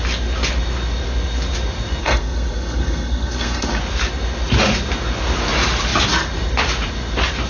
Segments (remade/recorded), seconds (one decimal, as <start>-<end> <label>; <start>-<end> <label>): 0.0-2.0 recorded; 2.0-3.8 remade; 3.8-7.5 recorded